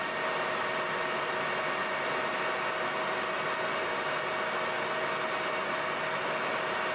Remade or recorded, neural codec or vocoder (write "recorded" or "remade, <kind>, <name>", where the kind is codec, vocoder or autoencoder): recorded